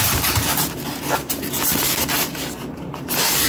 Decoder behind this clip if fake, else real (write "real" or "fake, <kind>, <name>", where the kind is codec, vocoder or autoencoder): fake, vocoder, BigVGAN v2